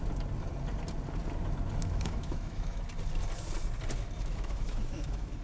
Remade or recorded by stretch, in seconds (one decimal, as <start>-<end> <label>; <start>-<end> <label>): 0.0-1.8 recorded; 1.8-2.8 remade; 2.8-4.3 recorded; 4.3-5.4 remade

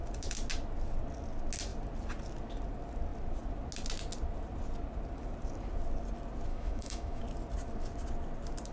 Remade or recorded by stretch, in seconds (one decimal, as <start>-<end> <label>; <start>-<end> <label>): 0.0-6.5 recorded; 6.5-7.2 remade; 7.2-8.7 recorded

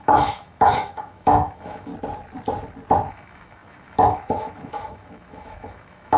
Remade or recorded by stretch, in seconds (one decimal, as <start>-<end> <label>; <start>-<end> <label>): 0.0-1.9 remade; 1.9-3.1 recorded; 3.1-6.2 remade

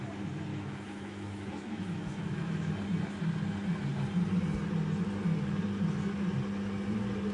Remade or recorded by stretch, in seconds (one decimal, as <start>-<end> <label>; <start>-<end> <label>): 0.0-0.5 recorded; 0.5-2.7 remade; 2.7-7.3 recorded

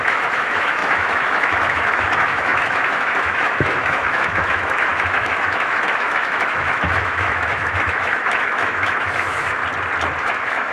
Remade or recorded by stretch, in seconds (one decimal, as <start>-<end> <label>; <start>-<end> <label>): 0.0-9.6 remade; 9.6-10.2 recorded; 10.2-10.7 remade

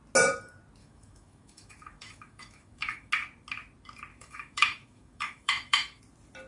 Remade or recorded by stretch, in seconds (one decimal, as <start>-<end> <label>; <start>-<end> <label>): 0.0-0.8 recorded; 0.8-3.1 remade; 3.1-4.1 recorded; 4.1-6.0 remade; 6.0-6.5 recorded